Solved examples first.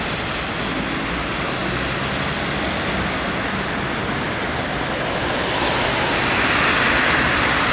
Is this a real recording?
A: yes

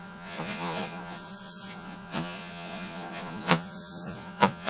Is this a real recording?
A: no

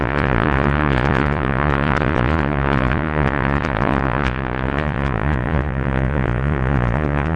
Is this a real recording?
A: no